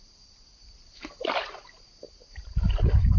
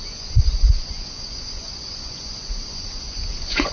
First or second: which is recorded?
first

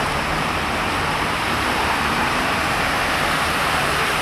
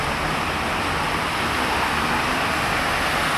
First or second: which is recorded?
second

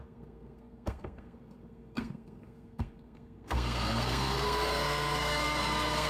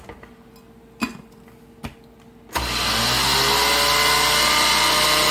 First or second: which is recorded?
second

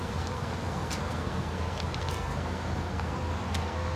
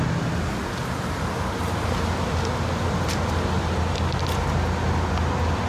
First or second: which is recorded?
second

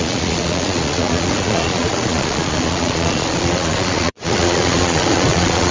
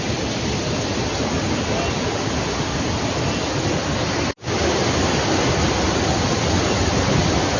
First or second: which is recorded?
second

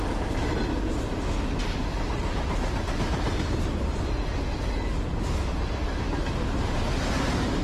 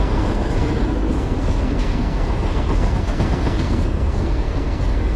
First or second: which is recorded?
first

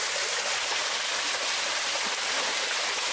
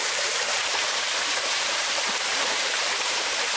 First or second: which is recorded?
first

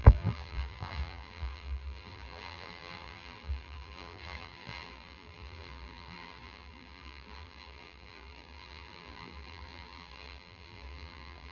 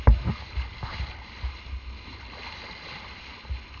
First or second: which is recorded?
second